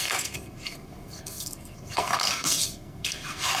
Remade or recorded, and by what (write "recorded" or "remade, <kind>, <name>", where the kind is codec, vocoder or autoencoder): remade, codec, SNAC